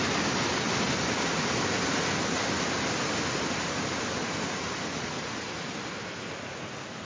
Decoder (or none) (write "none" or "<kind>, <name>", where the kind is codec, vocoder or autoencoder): none